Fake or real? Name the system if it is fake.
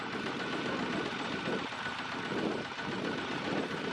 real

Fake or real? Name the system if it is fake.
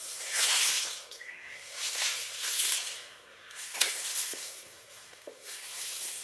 fake, codec, SNAC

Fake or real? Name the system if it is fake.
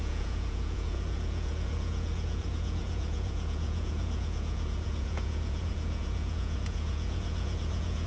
fake, vocoder, Vocos